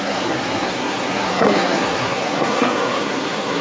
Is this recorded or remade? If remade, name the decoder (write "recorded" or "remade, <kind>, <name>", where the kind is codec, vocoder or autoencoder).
remade, codec, SNAC